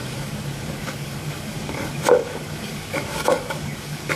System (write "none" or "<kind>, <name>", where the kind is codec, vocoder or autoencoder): codec, DAC